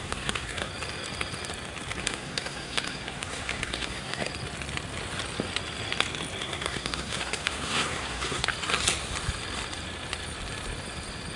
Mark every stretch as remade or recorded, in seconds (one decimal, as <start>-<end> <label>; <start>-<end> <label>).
0.0-0.7 remade; 0.7-2.0 recorded; 2.0-4.3 remade; 4.3-6.4 recorded; 6.4-8.5 remade; 8.5-11.4 recorded